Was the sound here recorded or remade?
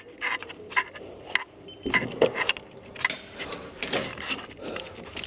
recorded